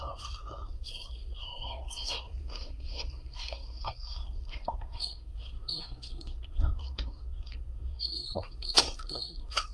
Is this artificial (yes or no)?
yes